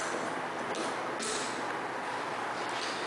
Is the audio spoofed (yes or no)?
no